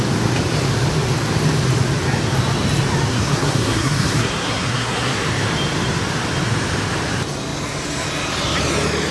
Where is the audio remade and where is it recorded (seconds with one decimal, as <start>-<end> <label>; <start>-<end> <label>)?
0.0-3.1 recorded; 3.1-5.2 remade; 5.2-9.1 recorded